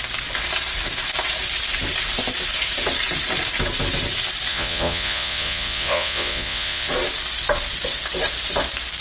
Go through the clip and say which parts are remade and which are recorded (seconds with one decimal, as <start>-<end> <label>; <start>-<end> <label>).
0.0-4.5 recorded; 4.5-6.9 remade; 6.9-9.0 recorded